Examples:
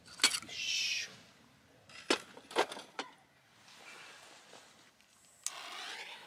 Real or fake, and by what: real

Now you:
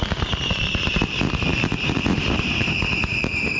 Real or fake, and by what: fake, vocoder, BigVGAN v2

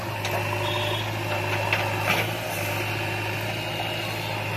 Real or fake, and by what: real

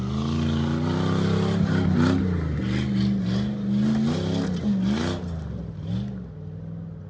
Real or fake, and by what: real